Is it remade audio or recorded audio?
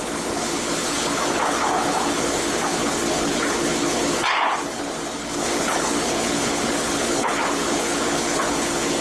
remade